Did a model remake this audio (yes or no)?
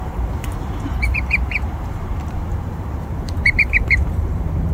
yes